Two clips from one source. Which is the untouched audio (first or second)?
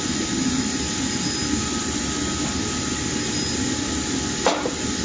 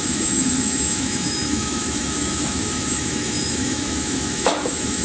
first